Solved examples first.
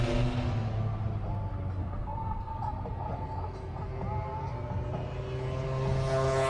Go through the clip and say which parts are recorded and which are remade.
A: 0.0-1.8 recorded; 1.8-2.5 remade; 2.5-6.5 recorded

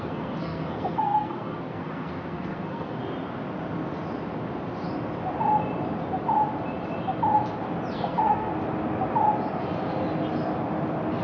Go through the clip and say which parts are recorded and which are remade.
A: 0.0-3.0 remade; 3.0-7.9 recorded; 7.9-8.5 remade; 8.5-11.2 recorded

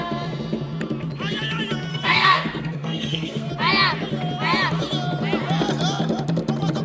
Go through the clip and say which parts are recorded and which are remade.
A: 0.0-1.9 recorded; 1.9-3.5 remade; 3.5-6.8 recorded

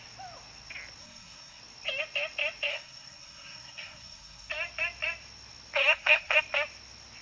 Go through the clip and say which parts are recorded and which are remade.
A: 0.0-1.0 recorded; 1.0-1.6 remade; 1.6-2.7 recorded; 2.7-4.5 remade; 4.5-5.8 recorded; 5.8-6.4 remade; 6.4-7.2 recorded

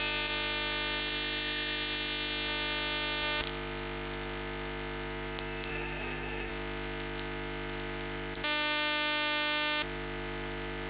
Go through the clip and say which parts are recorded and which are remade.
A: 0.0-5.7 recorded; 5.7-6.5 remade; 6.5-10.9 recorded